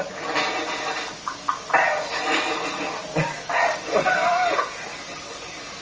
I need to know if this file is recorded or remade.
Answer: recorded